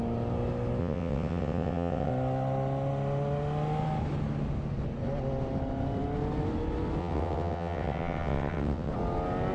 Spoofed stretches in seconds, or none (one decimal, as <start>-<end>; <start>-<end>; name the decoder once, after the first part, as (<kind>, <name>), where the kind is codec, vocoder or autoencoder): 0.8-2.1 (vocoder, WaveNeXt); 7.0-8.9

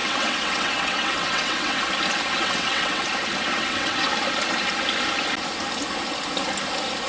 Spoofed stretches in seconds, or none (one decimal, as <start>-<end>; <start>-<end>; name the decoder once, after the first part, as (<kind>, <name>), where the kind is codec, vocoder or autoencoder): 0.0-1.8 (vocoder, WaveNeXt); 2.3-3.1; 3.5-4.1

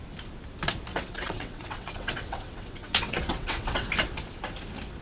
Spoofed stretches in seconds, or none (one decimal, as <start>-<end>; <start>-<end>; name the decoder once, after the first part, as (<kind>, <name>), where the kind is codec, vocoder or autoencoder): 0.9-3.9 (vocoder, WaveNeXt)

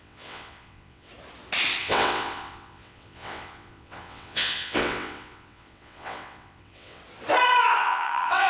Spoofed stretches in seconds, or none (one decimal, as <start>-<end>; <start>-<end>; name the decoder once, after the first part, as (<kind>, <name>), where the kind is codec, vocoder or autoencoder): 0.0-1.1 (vocoder, WaveNeXt); 1.8-7.0; 7.8-8.5

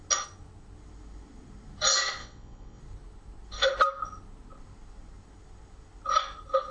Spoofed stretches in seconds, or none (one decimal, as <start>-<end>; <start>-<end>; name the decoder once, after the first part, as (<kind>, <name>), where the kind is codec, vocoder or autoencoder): 2.2-2.8 (vocoder, WaveNeXt)